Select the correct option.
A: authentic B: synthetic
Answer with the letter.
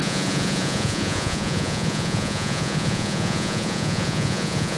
B